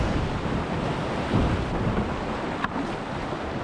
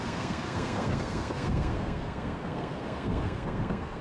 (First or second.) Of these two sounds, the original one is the first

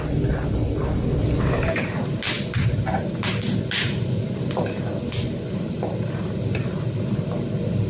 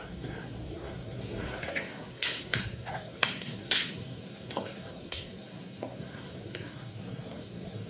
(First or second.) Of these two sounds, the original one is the first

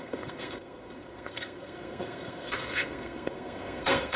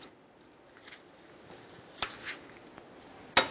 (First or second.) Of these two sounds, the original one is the second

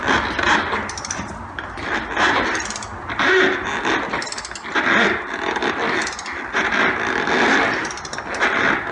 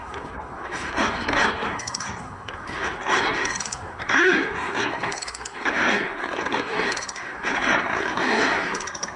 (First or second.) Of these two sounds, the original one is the first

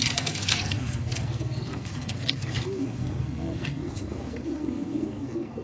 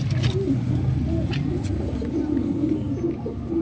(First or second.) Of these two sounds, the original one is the second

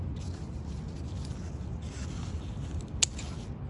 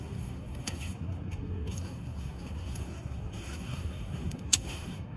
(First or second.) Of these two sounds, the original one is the first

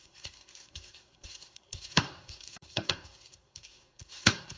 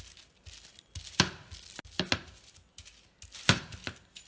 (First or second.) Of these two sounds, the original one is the second